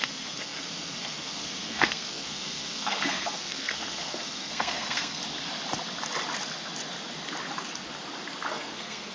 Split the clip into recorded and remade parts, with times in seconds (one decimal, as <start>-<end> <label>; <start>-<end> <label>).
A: 0.0-5.2 remade; 5.2-8.5 recorded; 8.5-9.1 remade

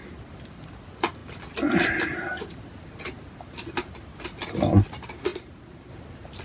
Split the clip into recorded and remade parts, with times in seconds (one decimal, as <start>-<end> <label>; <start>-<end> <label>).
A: 0.0-6.4 recorded

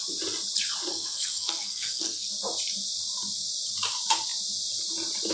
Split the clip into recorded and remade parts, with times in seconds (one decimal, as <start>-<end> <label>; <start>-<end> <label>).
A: 0.0-0.9 recorded; 0.9-2.3 remade; 2.3-5.3 recorded

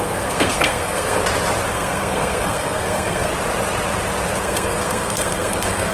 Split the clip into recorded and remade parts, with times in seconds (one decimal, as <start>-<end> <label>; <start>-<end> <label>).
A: 0.0-1.2 remade; 1.2-1.7 recorded; 1.7-3.3 remade; 3.3-4.4 recorded; 4.4-5.9 remade

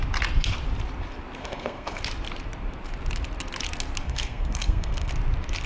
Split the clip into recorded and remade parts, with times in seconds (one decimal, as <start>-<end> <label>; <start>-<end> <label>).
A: 0.0-1.4 recorded; 1.4-2.0 remade; 2.0-4.0 recorded; 4.0-5.1 remade; 5.1-5.7 recorded